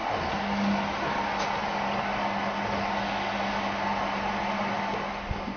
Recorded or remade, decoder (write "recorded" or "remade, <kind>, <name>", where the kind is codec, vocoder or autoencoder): recorded